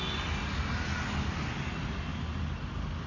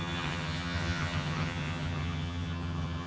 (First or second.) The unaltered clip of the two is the first